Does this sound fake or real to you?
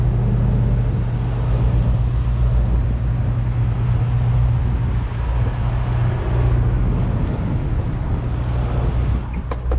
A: real